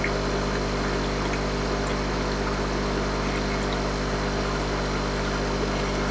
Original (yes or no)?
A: yes